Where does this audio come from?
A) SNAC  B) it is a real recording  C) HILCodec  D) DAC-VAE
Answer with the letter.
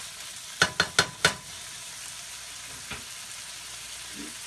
B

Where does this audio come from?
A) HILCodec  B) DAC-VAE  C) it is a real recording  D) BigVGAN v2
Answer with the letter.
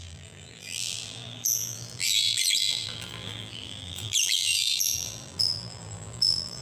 D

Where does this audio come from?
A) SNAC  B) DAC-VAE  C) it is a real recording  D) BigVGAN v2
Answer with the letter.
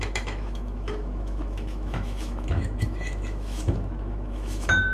B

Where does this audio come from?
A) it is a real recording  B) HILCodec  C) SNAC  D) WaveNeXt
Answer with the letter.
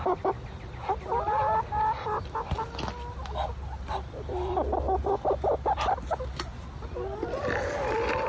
A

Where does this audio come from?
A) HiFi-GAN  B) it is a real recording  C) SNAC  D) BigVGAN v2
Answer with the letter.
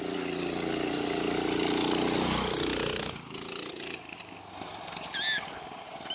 B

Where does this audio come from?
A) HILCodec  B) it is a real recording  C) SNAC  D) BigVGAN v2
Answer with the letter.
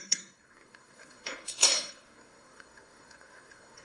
C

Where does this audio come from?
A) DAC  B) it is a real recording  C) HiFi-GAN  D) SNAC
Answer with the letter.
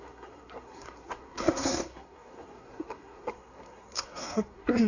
D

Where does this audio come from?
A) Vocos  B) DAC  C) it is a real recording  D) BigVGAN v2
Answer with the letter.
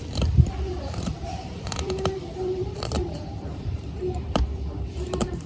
D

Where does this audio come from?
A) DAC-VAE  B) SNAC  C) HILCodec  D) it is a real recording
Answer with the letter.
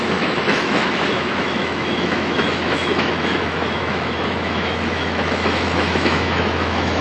A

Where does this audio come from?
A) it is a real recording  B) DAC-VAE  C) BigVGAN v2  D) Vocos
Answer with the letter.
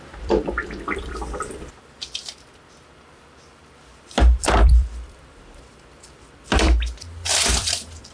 C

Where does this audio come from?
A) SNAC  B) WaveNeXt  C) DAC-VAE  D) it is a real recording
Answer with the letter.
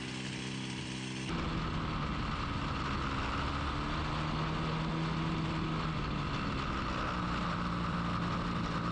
D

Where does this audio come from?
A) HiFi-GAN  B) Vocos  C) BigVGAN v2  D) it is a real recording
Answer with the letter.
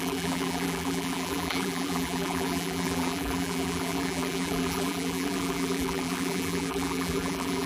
C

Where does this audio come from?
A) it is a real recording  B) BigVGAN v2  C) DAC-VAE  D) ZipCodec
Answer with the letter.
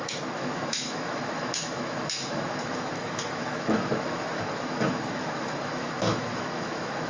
C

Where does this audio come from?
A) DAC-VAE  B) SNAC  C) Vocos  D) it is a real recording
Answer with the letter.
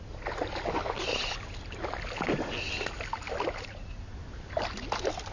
D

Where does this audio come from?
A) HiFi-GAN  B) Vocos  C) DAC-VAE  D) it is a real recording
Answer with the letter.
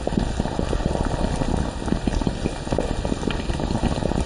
D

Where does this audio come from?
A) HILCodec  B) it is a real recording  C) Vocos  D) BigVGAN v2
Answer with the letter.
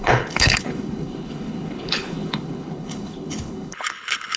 A